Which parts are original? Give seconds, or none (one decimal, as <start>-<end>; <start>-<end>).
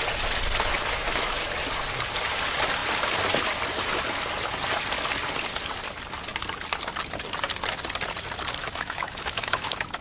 0.0-0.7; 1.5-8.6